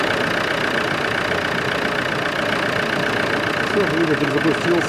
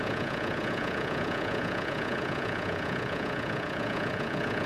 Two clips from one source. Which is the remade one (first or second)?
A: second